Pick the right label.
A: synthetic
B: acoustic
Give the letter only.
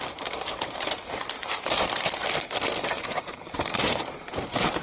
A